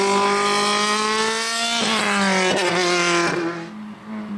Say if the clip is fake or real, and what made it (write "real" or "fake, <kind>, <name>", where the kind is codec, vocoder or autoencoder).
real